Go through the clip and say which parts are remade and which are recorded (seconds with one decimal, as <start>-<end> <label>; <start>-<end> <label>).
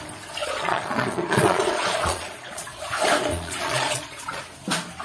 0.0-0.4 recorded; 0.4-2.8 remade; 2.8-3.3 recorded; 3.3-4.4 remade; 4.4-5.0 recorded